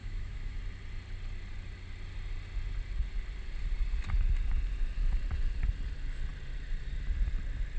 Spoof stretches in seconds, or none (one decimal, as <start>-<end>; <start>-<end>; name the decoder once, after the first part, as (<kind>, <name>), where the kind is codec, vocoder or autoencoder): 0.0-0.6 (autoencoder, DAC-VAE)